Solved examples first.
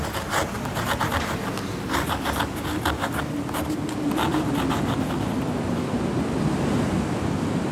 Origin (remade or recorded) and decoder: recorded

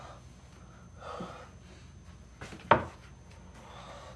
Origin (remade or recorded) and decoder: recorded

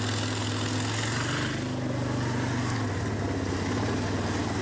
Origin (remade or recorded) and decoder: recorded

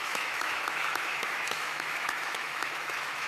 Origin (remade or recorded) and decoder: remade, autoencoder, DAC-VAE